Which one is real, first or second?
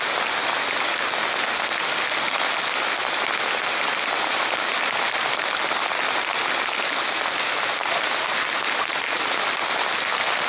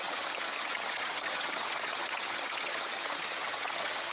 first